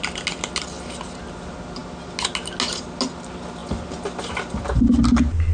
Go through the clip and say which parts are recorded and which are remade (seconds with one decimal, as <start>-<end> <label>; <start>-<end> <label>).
0.0-5.5 recorded